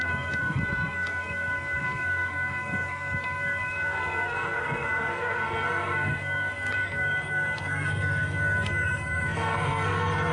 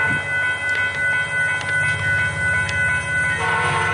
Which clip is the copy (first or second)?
first